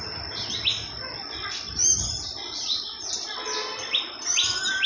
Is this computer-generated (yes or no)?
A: no